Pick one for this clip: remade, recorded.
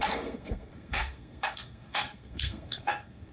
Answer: remade